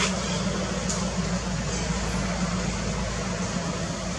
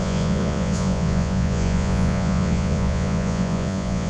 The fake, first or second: second